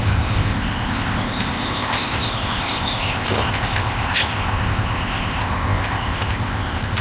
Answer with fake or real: fake